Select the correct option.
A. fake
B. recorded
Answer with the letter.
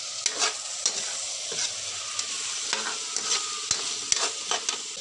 B